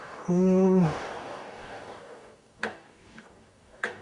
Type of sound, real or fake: fake